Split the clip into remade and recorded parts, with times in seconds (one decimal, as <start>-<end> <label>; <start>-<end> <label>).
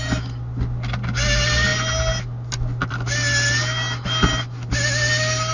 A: 0.0-5.5 recorded